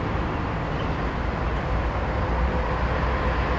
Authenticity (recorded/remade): recorded